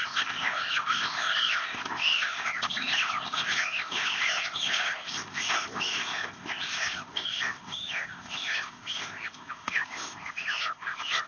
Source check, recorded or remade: remade